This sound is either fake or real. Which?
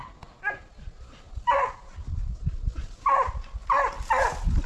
real